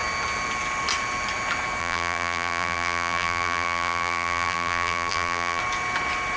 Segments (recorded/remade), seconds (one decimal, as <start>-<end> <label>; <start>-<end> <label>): 0.0-1.8 recorded; 1.8-5.6 remade; 5.6-6.4 recorded